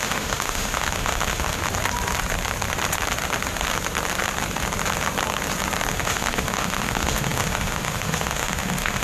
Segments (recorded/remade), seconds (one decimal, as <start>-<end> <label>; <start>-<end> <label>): 0.0-1.6 remade; 1.6-5.9 recorded; 5.9-9.0 remade